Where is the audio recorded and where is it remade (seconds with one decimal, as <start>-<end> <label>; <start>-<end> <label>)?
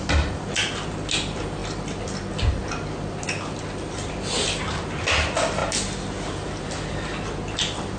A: 0.0-8.0 recorded